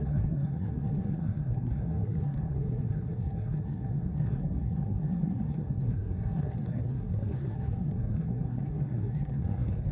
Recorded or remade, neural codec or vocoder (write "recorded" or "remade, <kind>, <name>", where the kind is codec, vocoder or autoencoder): remade, codec, SNAC